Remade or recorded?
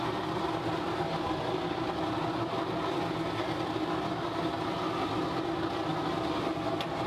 recorded